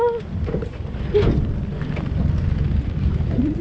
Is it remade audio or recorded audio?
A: recorded